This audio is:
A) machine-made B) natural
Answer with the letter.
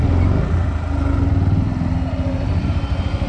B